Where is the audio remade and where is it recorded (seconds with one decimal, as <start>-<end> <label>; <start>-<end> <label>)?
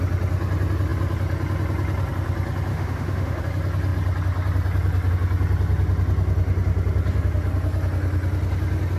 0.0-2.7 recorded; 2.7-3.4 remade; 3.4-9.0 recorded